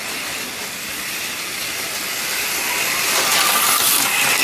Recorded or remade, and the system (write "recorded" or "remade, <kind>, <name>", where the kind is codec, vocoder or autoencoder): recorded